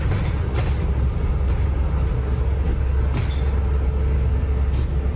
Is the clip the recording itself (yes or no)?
yes